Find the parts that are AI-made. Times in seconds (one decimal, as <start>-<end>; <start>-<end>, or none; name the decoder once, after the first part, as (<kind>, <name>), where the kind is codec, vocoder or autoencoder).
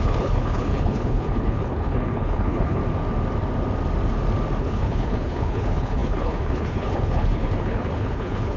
0.0-2.8 (codec, HILCodec); 4.6-8.6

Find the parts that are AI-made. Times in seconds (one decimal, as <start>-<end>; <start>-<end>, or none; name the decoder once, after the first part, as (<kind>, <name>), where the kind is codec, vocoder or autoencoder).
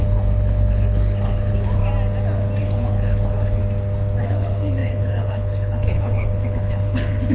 0.0-1.8 (codec, HILCodec); 2.6-3.6; 4.2-7.3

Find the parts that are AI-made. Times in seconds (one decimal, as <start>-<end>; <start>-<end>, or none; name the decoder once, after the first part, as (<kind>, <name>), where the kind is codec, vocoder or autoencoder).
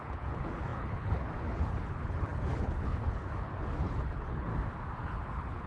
0.0-4.5 (codec, HILCodec); 5.0-5.7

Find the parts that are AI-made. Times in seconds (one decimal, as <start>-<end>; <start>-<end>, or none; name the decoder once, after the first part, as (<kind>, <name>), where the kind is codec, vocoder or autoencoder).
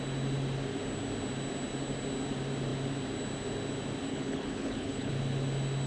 4.1-5.1 (codec, HILCodec)